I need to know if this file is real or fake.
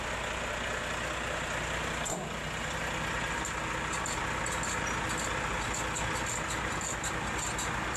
real